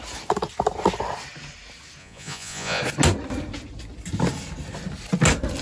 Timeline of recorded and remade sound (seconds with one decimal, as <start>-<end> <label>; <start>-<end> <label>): 0.0-2.0 recorded; 2.0-2.8 remade; 2.8-5.6 recorded

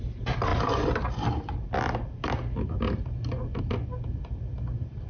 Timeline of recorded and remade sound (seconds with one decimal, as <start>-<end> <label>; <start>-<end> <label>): 0.0-5.1 recorded